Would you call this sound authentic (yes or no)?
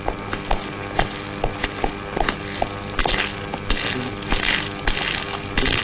yes